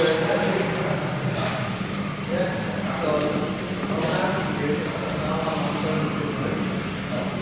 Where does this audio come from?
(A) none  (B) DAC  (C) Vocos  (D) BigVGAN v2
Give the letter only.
A